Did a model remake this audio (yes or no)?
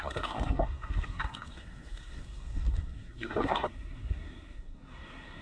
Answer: yes